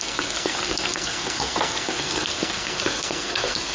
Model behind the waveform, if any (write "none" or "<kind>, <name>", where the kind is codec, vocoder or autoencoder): codec, SNAC